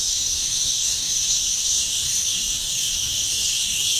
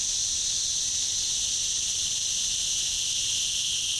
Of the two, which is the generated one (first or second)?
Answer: first